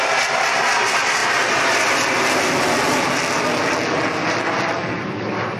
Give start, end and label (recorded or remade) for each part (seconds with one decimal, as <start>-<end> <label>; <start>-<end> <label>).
0.0-5.6 recorded